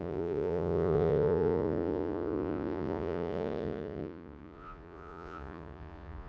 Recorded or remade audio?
remade